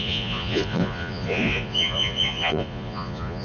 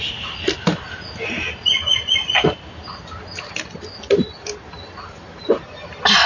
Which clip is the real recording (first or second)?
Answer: second